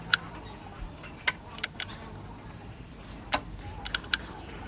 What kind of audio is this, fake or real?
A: real